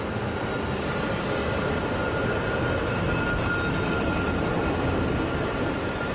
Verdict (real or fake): real